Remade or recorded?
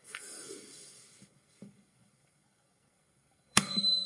remade